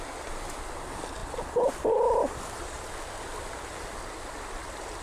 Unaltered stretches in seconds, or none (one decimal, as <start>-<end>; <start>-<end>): 0.0-5.0